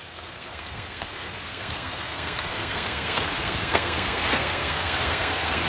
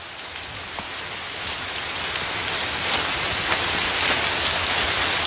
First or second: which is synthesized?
first